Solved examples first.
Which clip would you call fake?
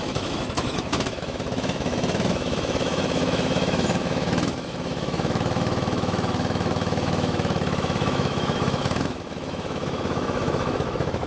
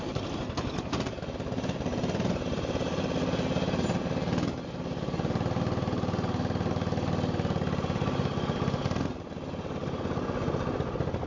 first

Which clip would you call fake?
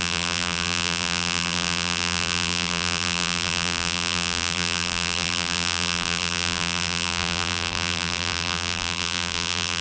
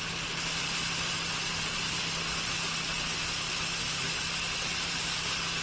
first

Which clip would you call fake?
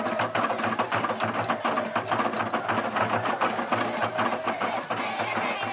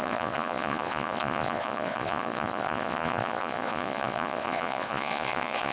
second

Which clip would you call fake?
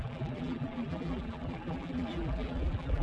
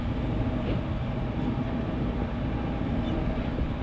first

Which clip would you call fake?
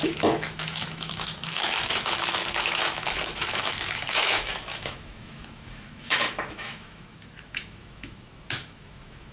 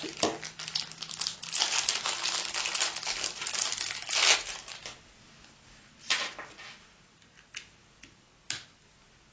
first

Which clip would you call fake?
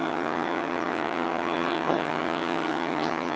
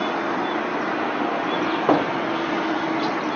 first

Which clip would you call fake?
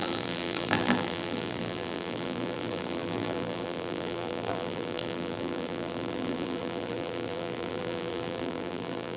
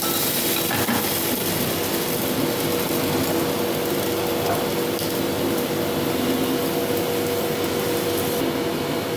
first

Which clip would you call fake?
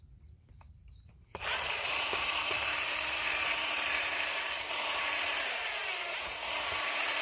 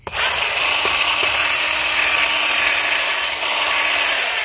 first